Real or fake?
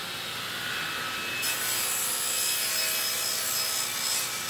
real